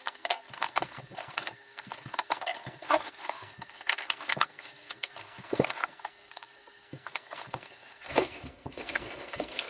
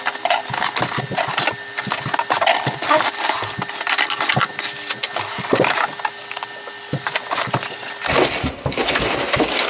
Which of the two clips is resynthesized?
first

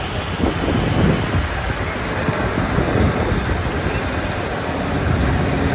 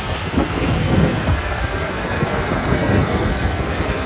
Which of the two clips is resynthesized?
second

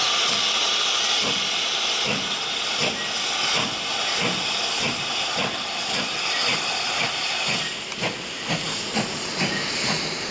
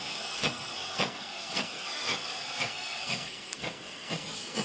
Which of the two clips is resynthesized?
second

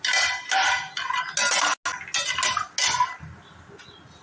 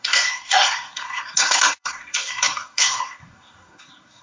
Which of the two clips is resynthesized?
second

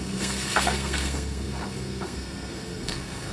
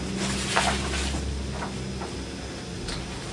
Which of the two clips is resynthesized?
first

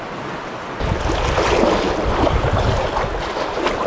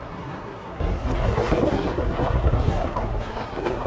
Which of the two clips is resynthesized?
second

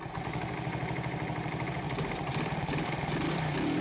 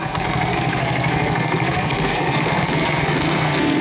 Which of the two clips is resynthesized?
second